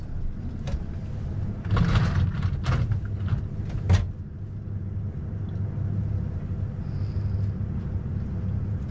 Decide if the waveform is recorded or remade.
recorded